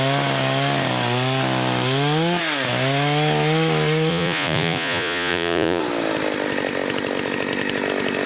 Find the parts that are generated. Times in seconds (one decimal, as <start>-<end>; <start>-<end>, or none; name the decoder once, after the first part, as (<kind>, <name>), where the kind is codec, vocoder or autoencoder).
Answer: 4.1-5.8 (vocoder, Vocos)

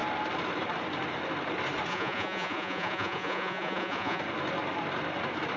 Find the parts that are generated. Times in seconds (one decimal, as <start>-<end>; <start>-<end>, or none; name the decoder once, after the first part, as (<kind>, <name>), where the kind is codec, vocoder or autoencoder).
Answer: 1.9-4.2 (vocoder, Vocos)

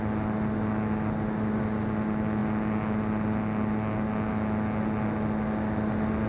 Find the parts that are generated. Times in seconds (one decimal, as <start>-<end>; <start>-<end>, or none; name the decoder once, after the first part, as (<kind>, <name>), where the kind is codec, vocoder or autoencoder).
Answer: none

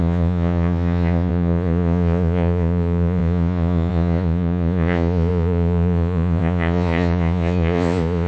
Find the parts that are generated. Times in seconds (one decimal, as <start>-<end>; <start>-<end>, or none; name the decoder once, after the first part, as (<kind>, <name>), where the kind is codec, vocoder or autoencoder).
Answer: 0.0-8.3 (vocoder, Vocos)

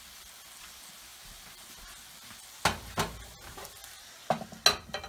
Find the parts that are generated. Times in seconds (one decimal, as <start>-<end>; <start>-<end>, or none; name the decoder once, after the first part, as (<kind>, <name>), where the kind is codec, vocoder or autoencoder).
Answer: none

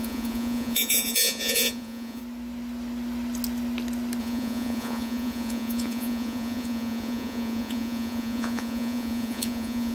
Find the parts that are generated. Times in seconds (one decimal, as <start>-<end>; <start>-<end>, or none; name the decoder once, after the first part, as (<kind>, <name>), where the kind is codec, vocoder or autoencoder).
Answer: 0.0-2.2 (vocoder, Vocos); 4.2-9.9

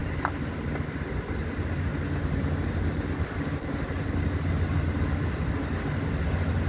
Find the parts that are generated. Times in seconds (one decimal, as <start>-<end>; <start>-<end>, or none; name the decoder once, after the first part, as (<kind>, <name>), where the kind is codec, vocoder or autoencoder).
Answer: none

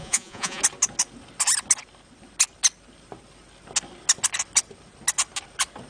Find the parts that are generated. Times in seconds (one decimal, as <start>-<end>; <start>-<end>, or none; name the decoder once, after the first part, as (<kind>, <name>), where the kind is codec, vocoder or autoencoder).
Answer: 0.0-0.6 (vocoder, Vocos)